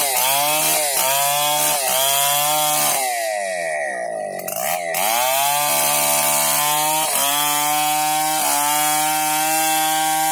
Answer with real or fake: real